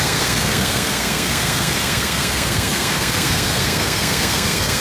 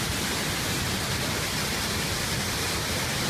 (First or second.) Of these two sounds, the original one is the second